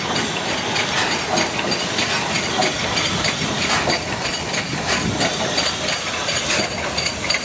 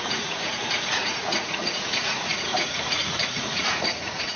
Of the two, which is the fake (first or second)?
second